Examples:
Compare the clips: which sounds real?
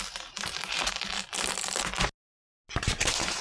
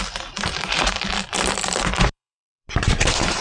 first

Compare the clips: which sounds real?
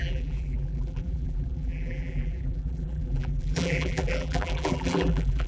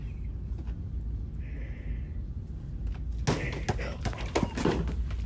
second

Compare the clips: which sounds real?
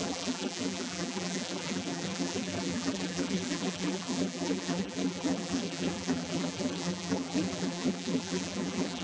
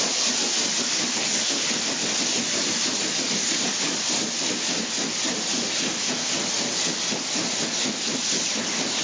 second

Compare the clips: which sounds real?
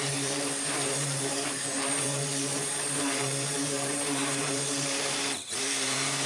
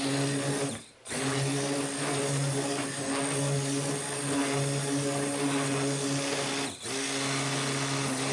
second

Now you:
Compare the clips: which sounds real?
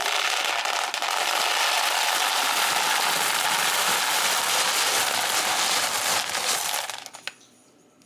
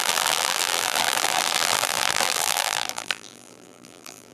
first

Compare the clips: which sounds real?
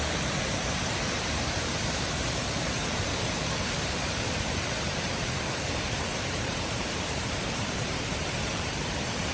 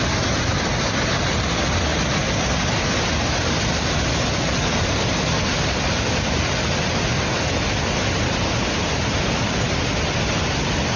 second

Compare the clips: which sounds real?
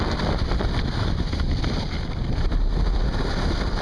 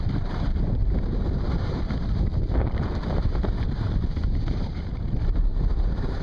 first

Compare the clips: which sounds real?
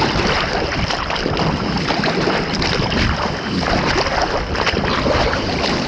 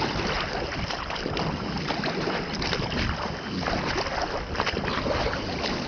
second